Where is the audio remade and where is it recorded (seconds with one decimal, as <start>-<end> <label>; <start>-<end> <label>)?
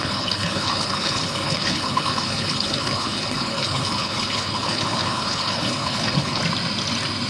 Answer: 0.0-6.4 remade; 6.4-7.3 recorded